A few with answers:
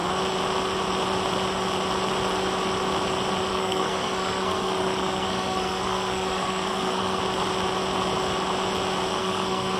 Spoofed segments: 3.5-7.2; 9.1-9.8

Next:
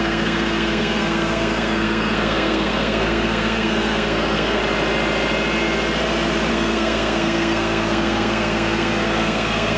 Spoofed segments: 0.0-4.6; 6.5-9.8